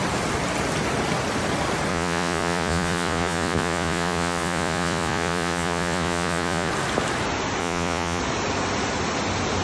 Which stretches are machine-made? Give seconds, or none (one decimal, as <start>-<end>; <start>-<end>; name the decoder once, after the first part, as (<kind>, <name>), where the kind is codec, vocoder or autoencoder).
1.9-6.7 (vocoder, Vocos); 7.6-8.2